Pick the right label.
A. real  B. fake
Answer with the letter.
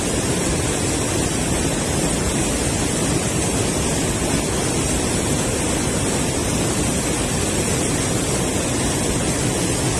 A